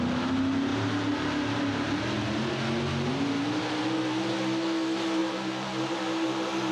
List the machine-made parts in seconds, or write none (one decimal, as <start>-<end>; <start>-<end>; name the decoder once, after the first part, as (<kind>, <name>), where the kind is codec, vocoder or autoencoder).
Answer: 0.7-2.0 (vocoder, BigVGAN v2); 5.2-6.7